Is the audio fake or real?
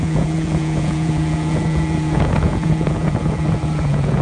fake